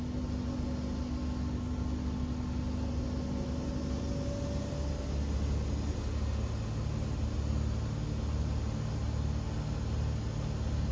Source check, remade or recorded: recorded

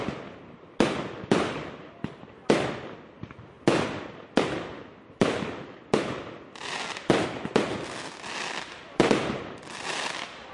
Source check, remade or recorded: recorded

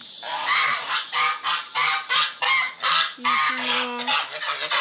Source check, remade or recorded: recorded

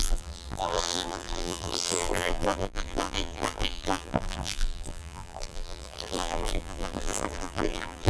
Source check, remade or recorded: remade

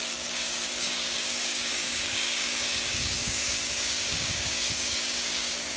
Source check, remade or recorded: remade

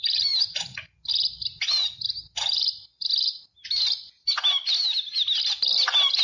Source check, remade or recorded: recorded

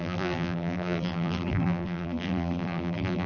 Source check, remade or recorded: remade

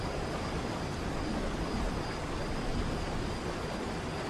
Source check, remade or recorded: recorded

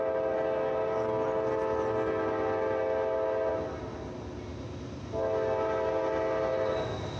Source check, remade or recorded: recorded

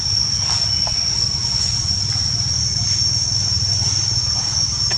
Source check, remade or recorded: recorded